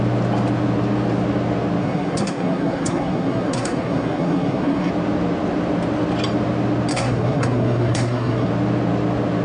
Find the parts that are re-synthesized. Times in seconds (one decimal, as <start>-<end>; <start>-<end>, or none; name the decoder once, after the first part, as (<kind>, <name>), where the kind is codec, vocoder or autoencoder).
1.8-4.9 (codec, SNAC); 6.9-8.5